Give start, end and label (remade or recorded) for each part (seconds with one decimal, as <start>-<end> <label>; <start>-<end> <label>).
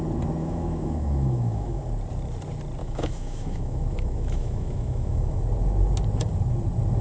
0.0-0.4 recorded; 0.4-1.8 remade; 1.8-2.8 recorded; 2.8-5.4 remade; 5.4-7.0 recorded